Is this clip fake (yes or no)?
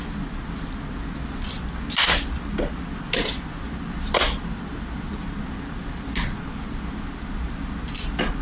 no